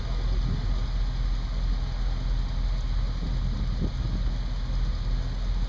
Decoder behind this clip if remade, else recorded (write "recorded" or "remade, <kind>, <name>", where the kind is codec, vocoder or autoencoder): recorded